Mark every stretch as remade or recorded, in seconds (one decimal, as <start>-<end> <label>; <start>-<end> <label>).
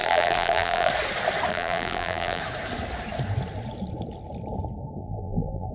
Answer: 0.0-0.9 remade; 0.9-1.5 recorded; 1.5-2.4 remade; 2.4-5.0 recorded; 5.0-5.7 remade